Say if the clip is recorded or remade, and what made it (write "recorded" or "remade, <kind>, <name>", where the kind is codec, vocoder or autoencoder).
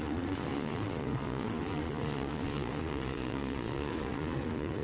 remade, vocoder, Vocos